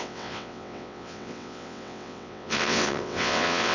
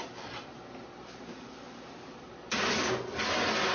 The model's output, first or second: first